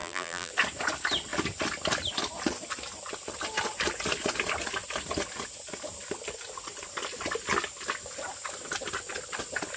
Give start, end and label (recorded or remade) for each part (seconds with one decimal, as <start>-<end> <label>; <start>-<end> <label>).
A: 0.0-0.5 remade; 0.5-9.8 recorded